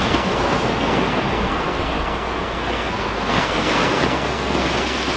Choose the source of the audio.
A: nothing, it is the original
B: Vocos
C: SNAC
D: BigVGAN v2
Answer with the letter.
C